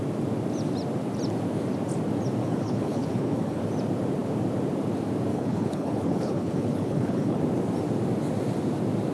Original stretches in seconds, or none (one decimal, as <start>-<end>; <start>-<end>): 0.0-2.4; 3.6-5.3; 7.4-9.1